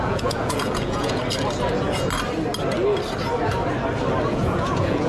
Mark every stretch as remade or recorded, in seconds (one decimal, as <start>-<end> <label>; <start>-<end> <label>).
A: 0.0-1.2 remade; 1.2-4.3 recorded; 4.3-5.1 remade